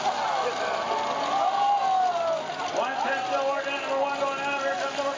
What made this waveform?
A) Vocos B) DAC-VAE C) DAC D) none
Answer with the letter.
D